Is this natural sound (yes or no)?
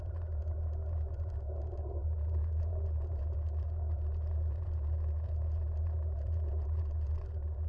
no